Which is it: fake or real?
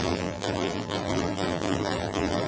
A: fake